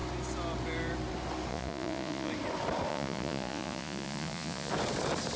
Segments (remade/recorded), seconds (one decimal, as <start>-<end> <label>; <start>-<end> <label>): 0.0-1.5 recorded; 1.5-2.3 remade; 2.3-2.9 recorded; 2.9-4.7 remade; 4.7-5.4 recorded